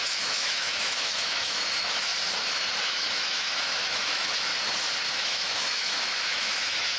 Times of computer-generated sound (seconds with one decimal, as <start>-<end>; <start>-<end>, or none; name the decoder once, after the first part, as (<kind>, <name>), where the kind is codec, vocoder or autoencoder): 0.0-2.1 (autoencoder, DAC-VAE); 2.8-4.5; 5.1-7.0